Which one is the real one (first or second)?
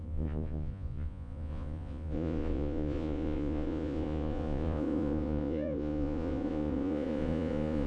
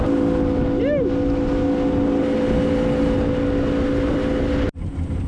second